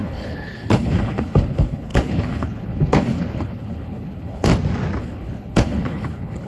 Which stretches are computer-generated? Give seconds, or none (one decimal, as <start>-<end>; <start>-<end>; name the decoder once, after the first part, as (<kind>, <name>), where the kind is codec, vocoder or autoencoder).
0.0-4.5 (codec, HILCodec); 5.0-6.5